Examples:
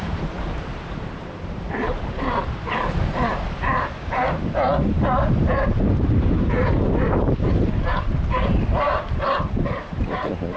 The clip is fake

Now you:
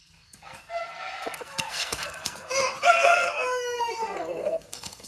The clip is fake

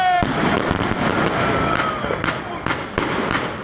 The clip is real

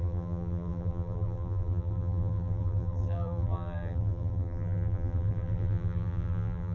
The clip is fake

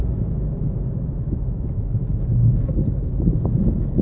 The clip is fake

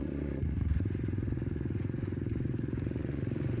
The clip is fake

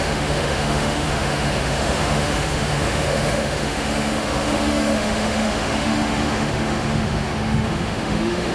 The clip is fake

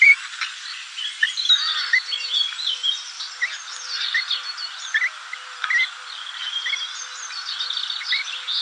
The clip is real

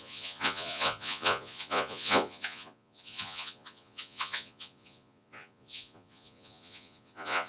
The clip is fake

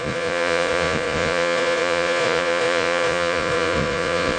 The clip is fake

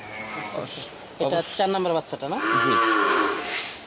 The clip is real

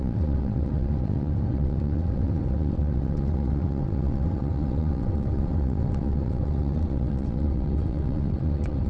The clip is fake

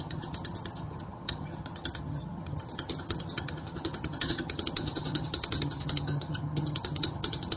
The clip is fake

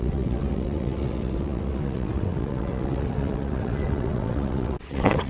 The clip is fake